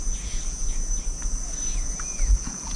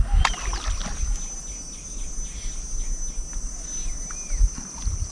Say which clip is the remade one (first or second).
first